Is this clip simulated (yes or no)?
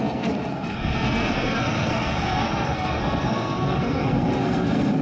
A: yes